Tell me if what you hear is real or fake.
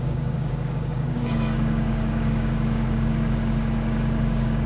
fake